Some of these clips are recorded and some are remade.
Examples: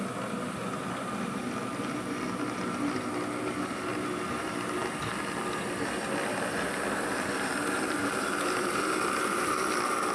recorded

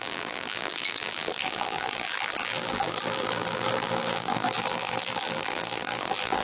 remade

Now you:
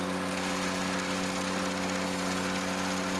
recorded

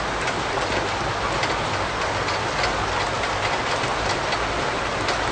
recorded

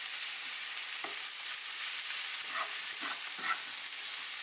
recorded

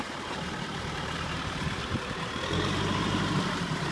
remade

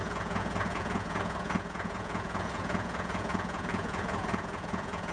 remade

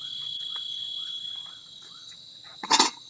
remade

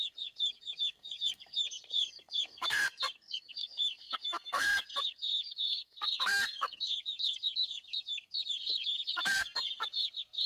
remade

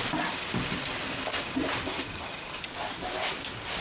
recorded